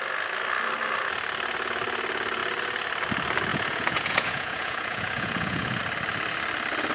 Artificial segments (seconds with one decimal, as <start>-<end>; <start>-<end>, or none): 3.5-5.8